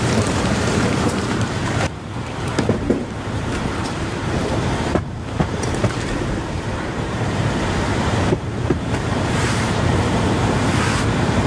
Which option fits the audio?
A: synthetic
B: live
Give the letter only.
A